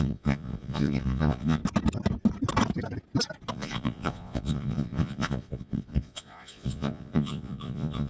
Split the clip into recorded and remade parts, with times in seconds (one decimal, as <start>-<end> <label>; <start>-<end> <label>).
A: 0.0-1.6 remade; 1.6-3.5 recorded; 3.5-8.1 remade